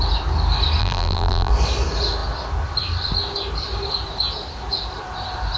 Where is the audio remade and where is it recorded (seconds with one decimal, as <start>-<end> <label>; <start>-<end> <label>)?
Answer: 0.0-0.8 recorded; 0.8-1.5 remade; 1.5-5.6 recorded